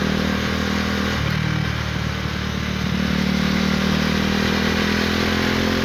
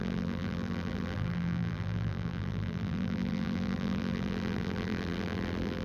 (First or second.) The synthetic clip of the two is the second